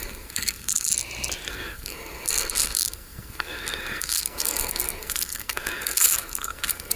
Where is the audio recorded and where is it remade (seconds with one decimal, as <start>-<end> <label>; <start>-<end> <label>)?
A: 0.0-0.9 remade; 0.9-1.5 recorded; 1.5-7.0 remade